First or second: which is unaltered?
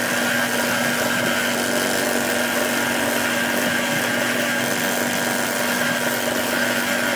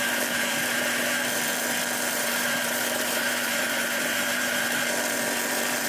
first